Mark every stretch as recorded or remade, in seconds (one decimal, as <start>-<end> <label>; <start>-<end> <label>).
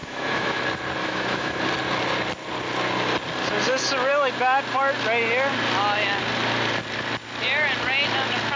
0.0-0.6 remade; 0.6-1.0 recorded; 1.0-1.6 remade; 1.6-8.6 recorded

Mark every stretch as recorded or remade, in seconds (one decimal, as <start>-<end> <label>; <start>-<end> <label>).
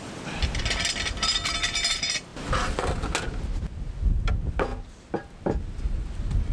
0.0-6.5 recorded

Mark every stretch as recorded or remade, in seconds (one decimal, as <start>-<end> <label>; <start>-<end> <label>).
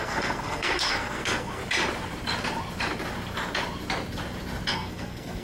0.0-1.6 remade; 1.6-4.7 recorded; 4.7-5.4 remade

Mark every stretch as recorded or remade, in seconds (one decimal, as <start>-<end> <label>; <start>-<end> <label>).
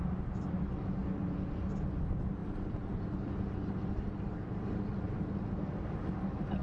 0.0-2.4 recorded; 2.4-4.8 remade; 4.8-6.6 recorded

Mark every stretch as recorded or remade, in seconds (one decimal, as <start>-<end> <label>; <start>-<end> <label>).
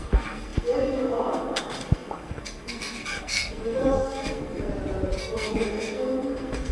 0.0-4.7 remade; 4.7-5.2 recorded; 5.2-6.7 remade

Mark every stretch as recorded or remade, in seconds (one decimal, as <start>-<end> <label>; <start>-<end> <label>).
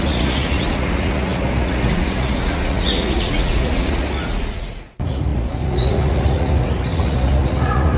0.0-8.0 remade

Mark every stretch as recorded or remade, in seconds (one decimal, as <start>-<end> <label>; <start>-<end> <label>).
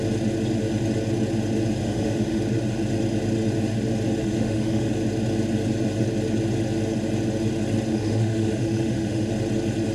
0.0-1.8 recorded; 1.8-2.4 remade; 2.4-4.2 recorded; 4.2-4.9 remade; 4.9-7.9 recorded; 7.9-9.3 remade; 9.3-9.9 recorded